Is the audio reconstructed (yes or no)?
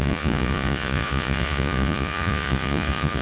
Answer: yes